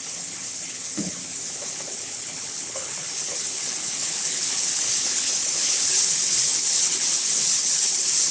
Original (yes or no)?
no